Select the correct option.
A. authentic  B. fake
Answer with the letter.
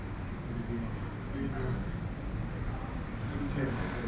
A